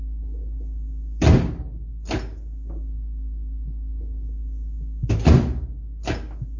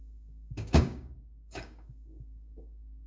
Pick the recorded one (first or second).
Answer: first